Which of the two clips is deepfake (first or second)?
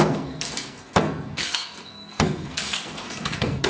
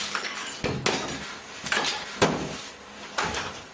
first